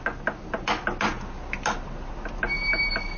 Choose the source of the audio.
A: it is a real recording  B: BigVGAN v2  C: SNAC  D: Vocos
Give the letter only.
A